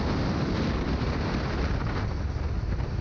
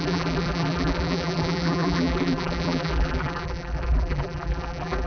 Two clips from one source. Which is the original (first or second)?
first